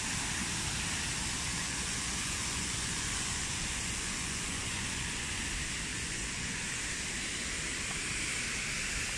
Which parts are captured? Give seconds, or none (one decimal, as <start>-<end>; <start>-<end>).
0.0-1.5; 5.4-5.9; 6.8-9.2